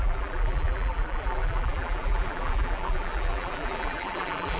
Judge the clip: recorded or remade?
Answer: remade